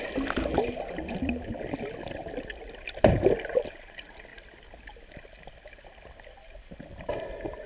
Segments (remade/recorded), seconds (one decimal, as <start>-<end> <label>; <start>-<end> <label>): 0.0-7.7 recorded

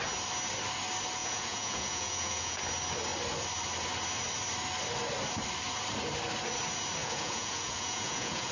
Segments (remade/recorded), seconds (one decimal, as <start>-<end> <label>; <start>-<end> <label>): 0.0-1.2 recorded; 1.2-2.6 remade; 2.6-7.0 recorded; 7.0-8.5 remade